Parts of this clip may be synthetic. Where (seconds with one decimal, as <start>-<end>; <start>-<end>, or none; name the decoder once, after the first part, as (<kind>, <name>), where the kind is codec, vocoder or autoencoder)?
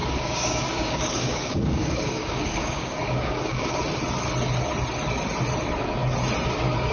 0.0-3.8 (codec, DAC)